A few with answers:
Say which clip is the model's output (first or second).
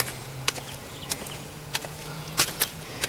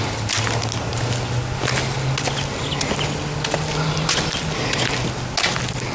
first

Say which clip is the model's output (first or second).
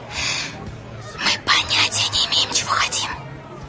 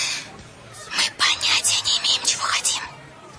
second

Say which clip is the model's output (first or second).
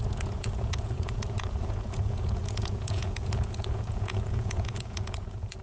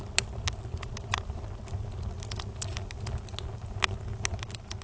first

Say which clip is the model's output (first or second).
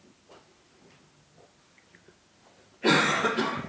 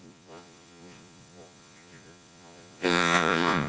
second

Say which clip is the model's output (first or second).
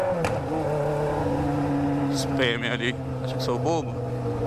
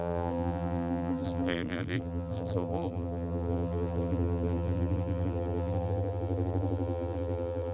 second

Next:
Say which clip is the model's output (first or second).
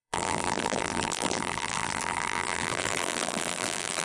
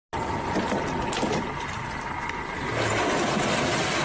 first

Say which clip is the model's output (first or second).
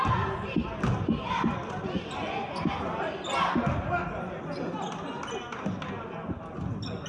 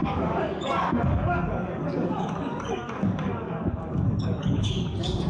second